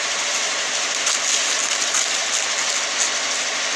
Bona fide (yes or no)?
yes